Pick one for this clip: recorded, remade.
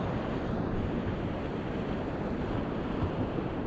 recorded